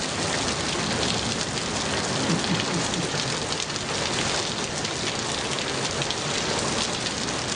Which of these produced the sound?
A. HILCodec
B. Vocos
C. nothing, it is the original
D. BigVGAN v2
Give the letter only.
C